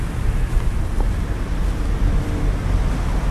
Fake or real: real